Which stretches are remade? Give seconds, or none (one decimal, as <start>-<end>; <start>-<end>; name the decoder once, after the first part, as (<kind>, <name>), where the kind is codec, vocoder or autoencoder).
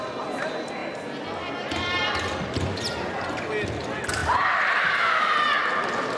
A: none